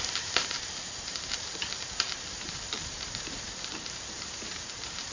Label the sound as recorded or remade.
remade